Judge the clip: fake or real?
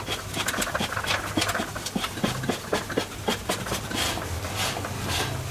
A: real